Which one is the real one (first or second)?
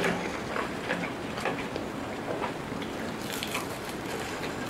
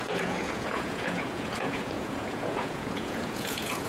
first